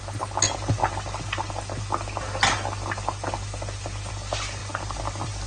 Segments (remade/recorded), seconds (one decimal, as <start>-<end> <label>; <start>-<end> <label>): 0.0-5.5 recorded

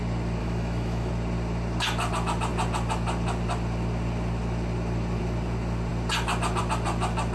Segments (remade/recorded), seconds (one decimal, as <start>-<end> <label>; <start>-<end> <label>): 0.0-0.4 recorded; 0.4-1.1 remade; 1.1-7.3 recorded

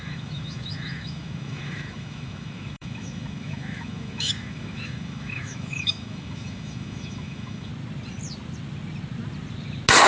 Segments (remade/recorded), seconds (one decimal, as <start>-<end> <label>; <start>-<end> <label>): 0.0-7.7 remade; 7.7-10.1 recorded

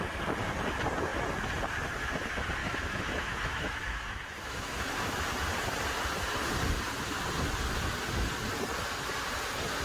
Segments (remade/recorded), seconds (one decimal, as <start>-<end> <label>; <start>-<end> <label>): 0.0-2.6 recorded; 2.6-5.2 remade; 5.2-9.8 recorded

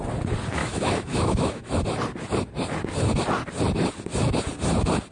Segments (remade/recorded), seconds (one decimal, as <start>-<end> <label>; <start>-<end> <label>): 0.0-0.6 recorded; 0.6-1.7 remade; 1.7-5.1 recorded

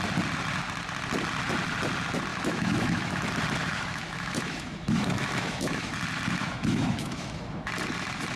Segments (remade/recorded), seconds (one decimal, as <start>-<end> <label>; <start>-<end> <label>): 0.0-2.3 recorded; 2.3-3.2 remade; 3.2-3.6 recorded; 3.6-5.9 remade; 5.9-6.4 recorded; 6.4-7.7 remade; 7.7-8.4 recorded

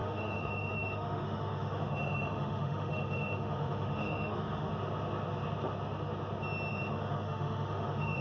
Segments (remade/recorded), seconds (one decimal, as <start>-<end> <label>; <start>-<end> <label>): 0.0-4.7 remade; 4.7-6.7 recorded; 6.7-8.2 remade